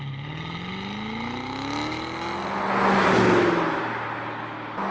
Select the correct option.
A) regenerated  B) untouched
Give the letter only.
B